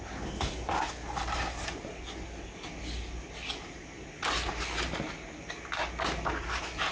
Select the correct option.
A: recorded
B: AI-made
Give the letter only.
A